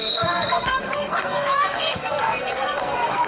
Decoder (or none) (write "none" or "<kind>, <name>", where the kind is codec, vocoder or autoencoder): codec, SNAC